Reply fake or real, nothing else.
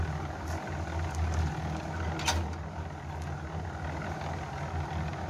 real